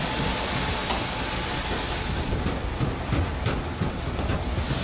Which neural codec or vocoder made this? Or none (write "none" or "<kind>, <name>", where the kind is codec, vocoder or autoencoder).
none